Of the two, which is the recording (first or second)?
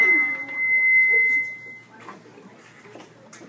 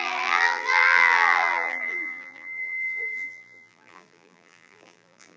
first